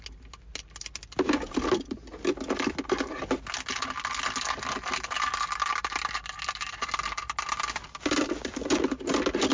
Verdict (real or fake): real